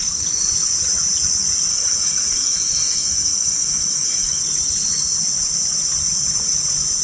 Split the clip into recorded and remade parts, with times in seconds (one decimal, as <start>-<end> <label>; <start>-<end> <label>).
0.0-1.7 recorded; 1.7-4.4 remade; 4.4-7.0 recorded